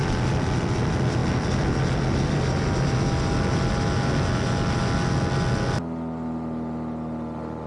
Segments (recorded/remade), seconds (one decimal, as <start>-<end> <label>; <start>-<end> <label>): 0.0-7.7 recorded